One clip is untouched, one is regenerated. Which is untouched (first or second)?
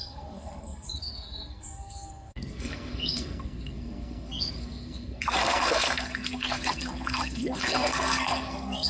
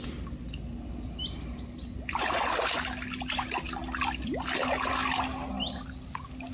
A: second